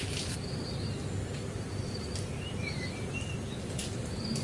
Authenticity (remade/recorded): recorded